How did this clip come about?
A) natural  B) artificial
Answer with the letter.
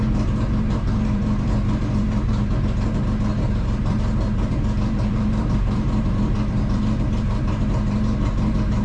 B